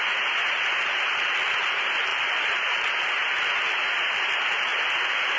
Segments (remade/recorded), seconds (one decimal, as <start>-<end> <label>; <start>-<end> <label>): 0.0-2.1 recorded; 2.1-3.1 remade; 3.1-5.4 recorded